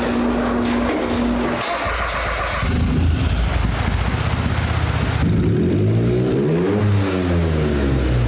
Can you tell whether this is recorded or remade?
recorded